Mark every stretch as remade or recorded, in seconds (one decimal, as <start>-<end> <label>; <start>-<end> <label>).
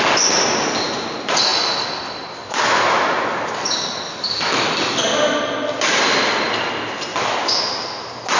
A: 0.0-8.4 recorded